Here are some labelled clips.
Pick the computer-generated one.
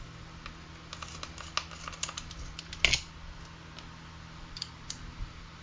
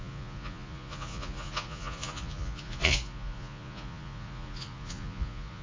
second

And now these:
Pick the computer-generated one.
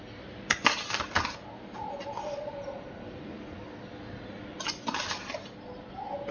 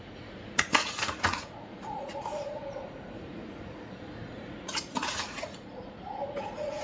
second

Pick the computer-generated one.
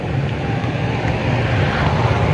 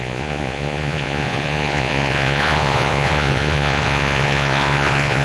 second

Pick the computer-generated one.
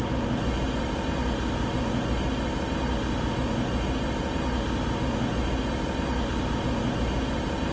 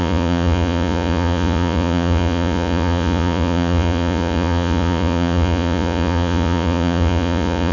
second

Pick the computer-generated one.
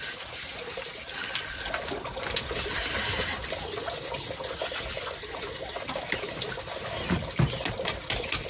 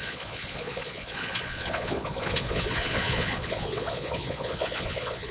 second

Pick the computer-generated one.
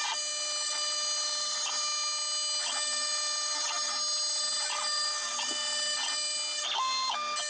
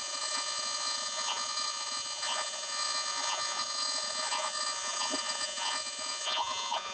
second